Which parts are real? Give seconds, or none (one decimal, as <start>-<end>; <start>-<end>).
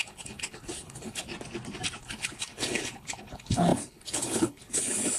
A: 1.3-2.0